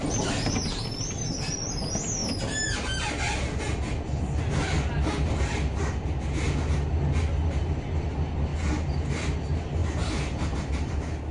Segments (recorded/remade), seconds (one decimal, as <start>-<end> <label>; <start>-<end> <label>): 0.0-9.8 recorded; 9.8-10.7 remade; 10.7-11.3 recorded